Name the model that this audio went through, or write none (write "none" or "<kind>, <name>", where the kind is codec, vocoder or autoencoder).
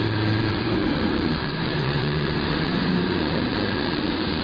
vocoder, Vocos